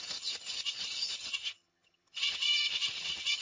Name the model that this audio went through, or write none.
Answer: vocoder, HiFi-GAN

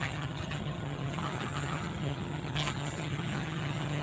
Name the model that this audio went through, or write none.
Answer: vocoder, HiFi-GAN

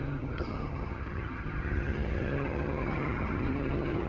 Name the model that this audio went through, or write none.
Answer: vocoder, HiFi-GAN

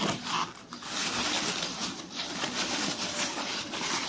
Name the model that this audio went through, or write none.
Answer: none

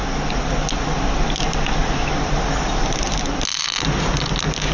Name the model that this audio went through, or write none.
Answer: none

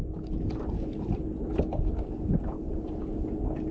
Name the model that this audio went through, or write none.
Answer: none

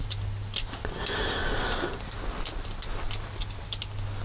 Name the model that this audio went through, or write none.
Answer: none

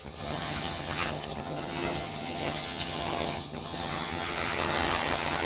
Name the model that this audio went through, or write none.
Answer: vocoder, HiFi-GAN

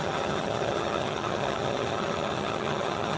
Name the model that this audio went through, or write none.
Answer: vocoder, HiFi-GAN